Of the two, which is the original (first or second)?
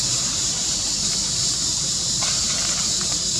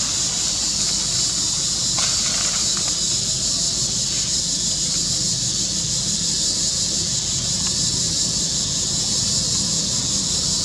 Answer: second